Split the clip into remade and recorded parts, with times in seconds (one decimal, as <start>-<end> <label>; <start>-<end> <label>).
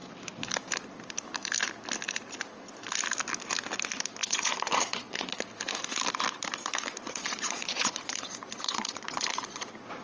0.0-4.2 recorded; 4.2-5.4 remade; 5.4-7.0 recorded; 7.0-9.6 remade; 9.6-10.0 recorded